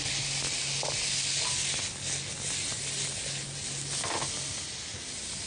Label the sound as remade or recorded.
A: recorded